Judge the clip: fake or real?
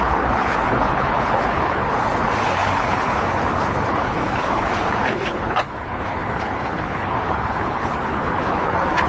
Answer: fake